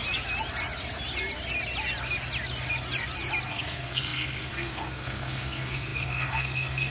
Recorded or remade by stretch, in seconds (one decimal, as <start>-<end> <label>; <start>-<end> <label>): 0.0-3.5 recorded; 3.5-6.9 remade